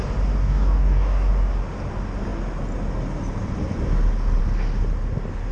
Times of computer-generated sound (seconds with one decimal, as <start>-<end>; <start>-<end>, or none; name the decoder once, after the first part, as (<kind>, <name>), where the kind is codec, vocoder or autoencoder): 0.4-1.3 (codec, DAC)